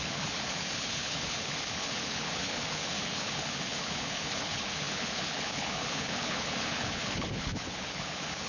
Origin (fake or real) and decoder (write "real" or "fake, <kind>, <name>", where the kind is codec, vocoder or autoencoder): fake, codec, HILCodec